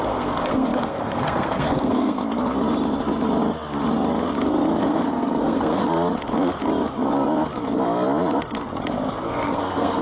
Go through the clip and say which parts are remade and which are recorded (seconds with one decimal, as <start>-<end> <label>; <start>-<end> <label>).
0.0-2.2 remade; 2.2-4.8 recorded; 4.8-5.8 remade; 5.8-9.2 recorded; 9.2-10.0 remade